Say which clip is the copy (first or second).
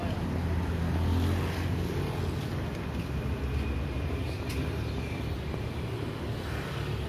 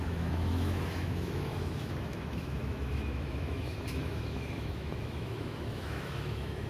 second